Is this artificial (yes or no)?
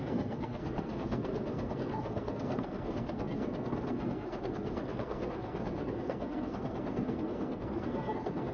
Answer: yes